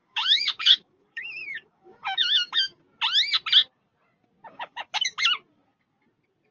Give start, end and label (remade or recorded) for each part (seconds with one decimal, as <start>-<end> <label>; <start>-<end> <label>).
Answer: 0.0-2.8 remade; 2.8-4.5 recorded; 4.5-5.2 remade; 5.2-6.5 recorded